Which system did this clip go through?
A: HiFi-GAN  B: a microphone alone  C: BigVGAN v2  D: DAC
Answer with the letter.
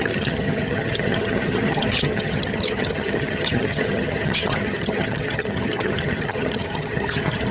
A